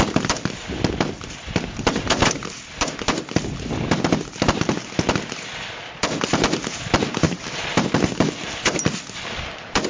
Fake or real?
fake